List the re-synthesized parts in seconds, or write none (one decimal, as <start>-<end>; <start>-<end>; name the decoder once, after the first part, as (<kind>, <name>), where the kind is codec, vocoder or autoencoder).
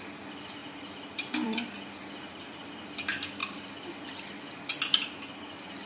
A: 0.6-2.0 (vocoder, BigVGAN v2); 3.4-4.4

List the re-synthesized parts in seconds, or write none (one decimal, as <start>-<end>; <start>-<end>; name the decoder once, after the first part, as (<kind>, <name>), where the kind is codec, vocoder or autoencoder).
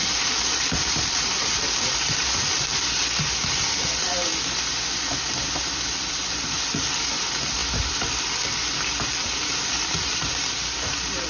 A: 0.0-2.7 (vocoder, BigVGAN v2); 3.5-4.3; 5.1-7.6; 9.2-11.3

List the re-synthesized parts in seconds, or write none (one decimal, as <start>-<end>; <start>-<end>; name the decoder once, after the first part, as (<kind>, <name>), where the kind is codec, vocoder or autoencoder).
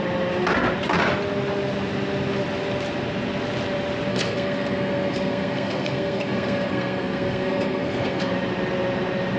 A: 4.1-8.3 (codec, SNAC)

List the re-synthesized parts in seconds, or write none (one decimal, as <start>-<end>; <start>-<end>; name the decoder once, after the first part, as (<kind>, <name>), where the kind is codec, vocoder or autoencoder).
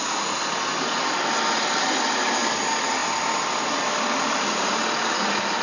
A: none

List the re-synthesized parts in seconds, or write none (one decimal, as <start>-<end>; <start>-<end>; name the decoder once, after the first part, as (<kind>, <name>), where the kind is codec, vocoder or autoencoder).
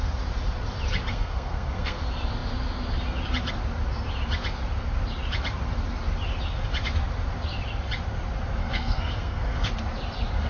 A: 1.1-2.0 (codec, SNAC); 8.6-9.7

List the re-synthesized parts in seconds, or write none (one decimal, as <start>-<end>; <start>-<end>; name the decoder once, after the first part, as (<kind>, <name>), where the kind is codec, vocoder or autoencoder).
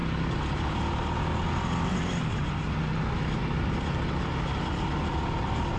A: 0.0-0.8 (vocoder, BigVGAN v2); 1.9-2.8; 3.4-5.8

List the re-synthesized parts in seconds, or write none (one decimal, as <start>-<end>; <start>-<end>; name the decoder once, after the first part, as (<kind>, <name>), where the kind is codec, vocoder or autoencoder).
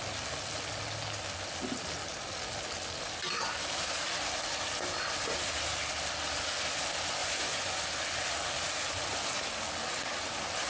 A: 7.2-7.8 (vocoder, Vocos)